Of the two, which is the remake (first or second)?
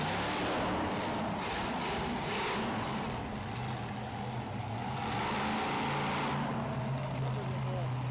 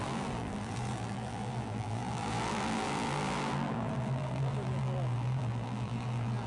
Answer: second